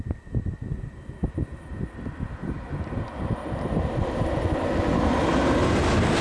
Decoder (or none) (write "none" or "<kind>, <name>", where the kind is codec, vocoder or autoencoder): none